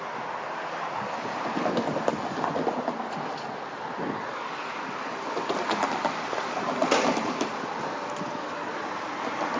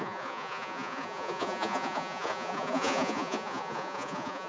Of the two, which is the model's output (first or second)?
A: second